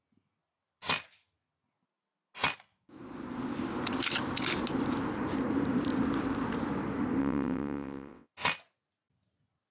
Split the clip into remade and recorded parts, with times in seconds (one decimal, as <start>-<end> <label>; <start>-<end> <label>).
0.0-7.2 recorded; 7.2-8.3 remade; 8.3-9.7 recorded